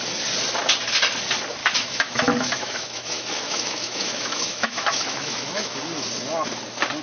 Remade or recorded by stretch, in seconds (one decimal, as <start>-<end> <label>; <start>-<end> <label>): 0.0-1.6 recorded; 1.6-5.8 remade; 5.8-7.0 recorded